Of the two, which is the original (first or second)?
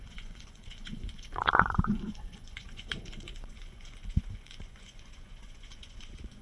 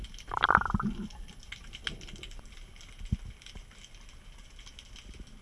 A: second